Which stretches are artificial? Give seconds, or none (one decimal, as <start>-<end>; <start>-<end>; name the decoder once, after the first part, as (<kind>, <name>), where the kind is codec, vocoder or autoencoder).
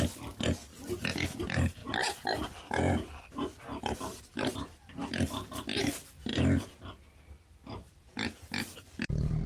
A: 0.0-0.7 (vocoder, BigVGAN v2); 1.4-1.8; 3.8-6.3; 7.2-9.5